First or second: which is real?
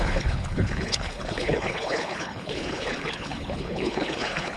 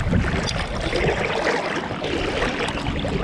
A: second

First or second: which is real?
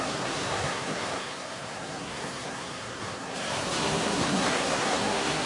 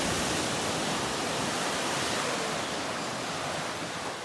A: second